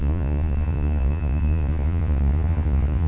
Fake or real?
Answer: fake